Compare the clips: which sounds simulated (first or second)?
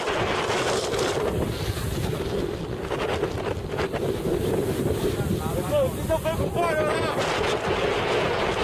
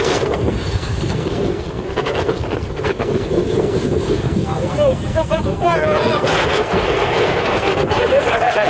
second